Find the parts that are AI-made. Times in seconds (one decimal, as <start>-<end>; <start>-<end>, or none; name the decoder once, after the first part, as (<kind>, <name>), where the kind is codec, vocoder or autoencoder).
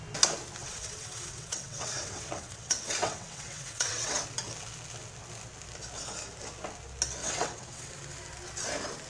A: 0.6-4.1 (vocoder, WaveNeXt); 7.2-7.9